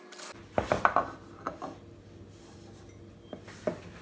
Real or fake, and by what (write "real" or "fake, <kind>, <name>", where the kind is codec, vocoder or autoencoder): real